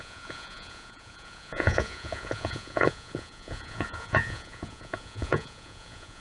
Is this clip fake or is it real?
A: fake